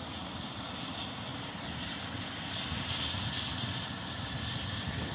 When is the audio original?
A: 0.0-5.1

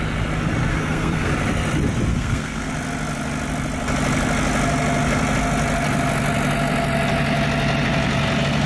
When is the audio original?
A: 0.0-0.7; 1.3-2.1; 2.7-8.7

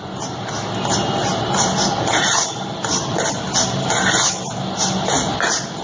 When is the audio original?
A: 0.0-5.8

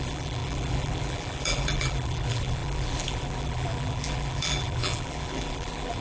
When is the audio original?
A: none